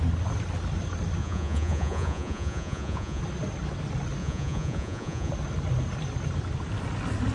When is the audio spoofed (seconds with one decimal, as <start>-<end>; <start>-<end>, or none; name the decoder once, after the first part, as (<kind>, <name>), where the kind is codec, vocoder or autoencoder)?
1.2-3.2 (vocoder, Vocos); 4.2-5.3